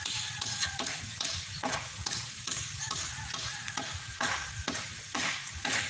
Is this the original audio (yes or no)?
no